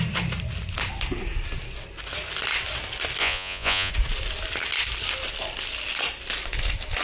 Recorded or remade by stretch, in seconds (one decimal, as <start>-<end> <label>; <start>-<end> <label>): 0.0-3.2 recorded; 3.2-3.9 remade; 3.9-7.0 recorded